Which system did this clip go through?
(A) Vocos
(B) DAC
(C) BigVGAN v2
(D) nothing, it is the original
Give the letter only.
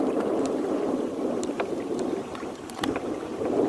C